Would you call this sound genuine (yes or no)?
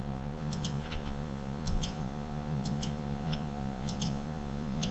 no